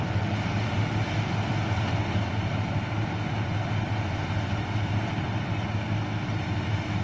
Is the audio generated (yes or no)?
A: no